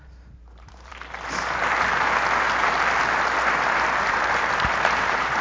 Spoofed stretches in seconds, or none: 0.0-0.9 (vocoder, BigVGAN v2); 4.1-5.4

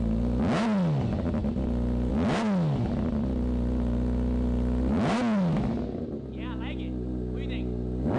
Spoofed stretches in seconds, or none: none

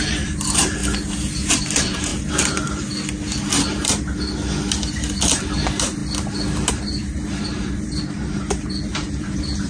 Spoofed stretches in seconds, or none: 0.0-0.8 (vocoder, BigVGAN v2); 1.5-2.1; 4.9-6.0; 6.7-9.7

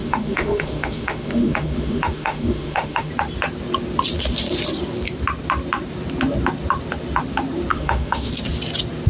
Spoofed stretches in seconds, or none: 0.0-3.1 (autoencoder, DAC-VAE); 7.7-8.3

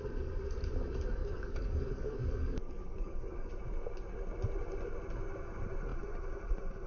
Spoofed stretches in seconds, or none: 1.2-3.5 (codec, DAC)

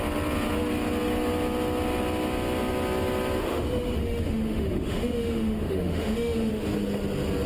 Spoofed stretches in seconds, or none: 3.4-6.5 (autoencoder, DAC-VAE)